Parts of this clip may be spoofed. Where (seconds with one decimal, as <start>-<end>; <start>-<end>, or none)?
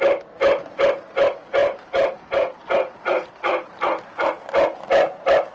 1.6-4.3